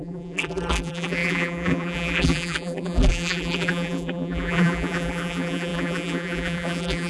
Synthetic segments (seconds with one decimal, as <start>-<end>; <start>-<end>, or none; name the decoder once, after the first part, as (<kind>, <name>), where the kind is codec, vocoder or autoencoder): 0.0-7.1 (vocoder, BigVGAN v2)